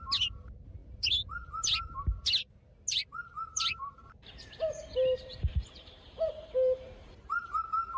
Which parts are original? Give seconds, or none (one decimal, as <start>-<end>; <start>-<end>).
0.0-3.5; 7.6-8.0